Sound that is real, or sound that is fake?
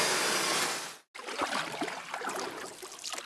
real